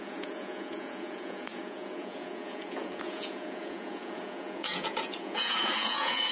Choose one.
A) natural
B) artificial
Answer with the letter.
B